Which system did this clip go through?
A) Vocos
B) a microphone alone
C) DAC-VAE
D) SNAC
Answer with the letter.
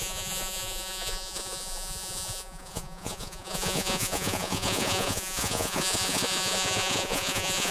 A